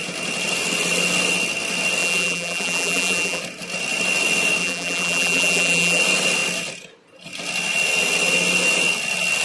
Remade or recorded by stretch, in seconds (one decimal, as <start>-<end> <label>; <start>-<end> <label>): 0.0-2.0 recorded; 2.0-3.4 remade; 3.4-4.6 recorded; 4.6-6.0 remade; 6.0-9.4 recorded